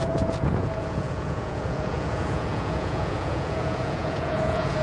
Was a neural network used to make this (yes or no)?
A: yes